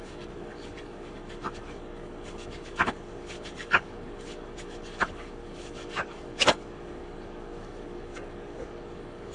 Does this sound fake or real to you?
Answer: fake